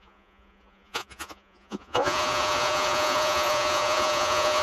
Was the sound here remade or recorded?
remade